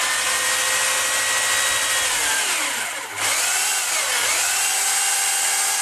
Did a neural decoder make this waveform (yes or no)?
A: no